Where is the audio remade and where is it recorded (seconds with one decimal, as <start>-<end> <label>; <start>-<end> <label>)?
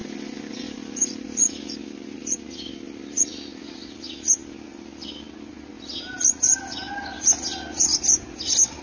0.0-8.8 recorded